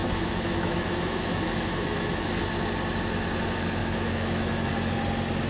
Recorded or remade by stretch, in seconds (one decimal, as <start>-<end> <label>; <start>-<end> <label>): 0.0-2.3 remade; 2.3-3.8 recorded; 3.8-4.7 remade; 4.7-5.5 recorded